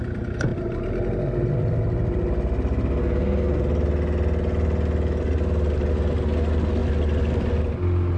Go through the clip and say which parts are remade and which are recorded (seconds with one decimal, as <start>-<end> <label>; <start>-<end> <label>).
0.0-3.0 recorded; 3.0-3.6 remade; 3.6-8.2 recorded